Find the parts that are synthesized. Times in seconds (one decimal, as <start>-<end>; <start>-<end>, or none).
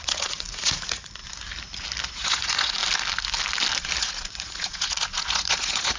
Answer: 0.0-1.2; 2.1-2.8; 4.0-6.0